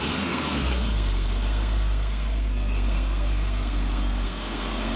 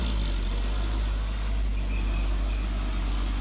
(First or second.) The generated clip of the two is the first